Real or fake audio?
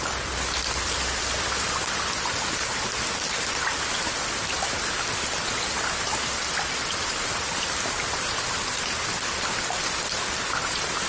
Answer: real